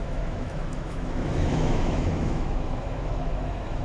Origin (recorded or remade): remade